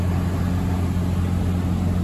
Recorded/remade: recorded